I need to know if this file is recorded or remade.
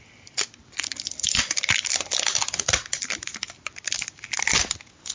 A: recorded